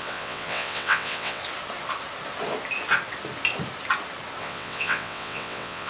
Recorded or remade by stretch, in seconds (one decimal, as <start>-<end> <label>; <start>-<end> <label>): 0.0-1.4 remade; 1.4-4.4 recorded; 4.4-5.9 remade